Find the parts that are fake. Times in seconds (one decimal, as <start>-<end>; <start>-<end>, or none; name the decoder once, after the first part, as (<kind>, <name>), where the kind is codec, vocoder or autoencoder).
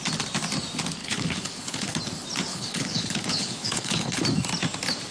1.0-2.0 (codec, HILCodec); 2.5-4.2